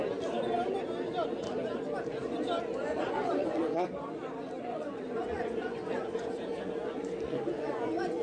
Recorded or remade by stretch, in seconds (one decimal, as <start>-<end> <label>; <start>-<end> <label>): 0.0-2.8 recorded; 2.8-3.6 remade; 3.6-4.6 recorded; 4.6-8.2 remade